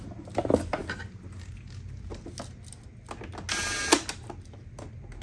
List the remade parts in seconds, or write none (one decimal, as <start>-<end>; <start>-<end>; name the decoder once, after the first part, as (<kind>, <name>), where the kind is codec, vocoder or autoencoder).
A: none